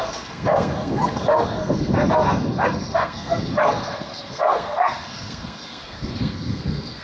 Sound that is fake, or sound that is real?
fake